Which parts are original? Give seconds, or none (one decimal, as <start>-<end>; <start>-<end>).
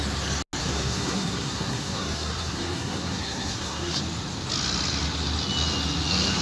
0.0-0.6; 4.0-6.4